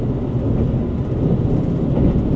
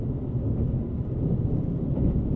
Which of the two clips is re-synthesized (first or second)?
second